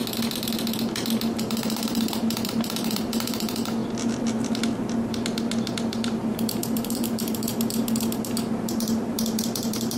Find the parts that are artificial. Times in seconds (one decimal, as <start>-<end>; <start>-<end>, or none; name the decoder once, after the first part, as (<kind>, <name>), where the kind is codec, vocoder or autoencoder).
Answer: 1.4-3.8 (vocoder, BigVGAN v2); 5.9-7.5; 8.5-10.0